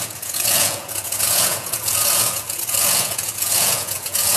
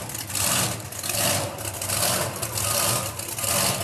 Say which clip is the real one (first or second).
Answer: second